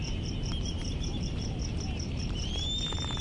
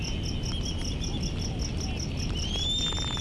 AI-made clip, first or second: first